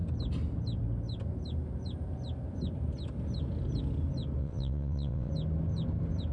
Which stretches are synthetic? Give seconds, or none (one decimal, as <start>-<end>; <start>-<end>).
4.4-5.3